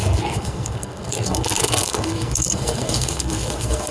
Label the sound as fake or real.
fake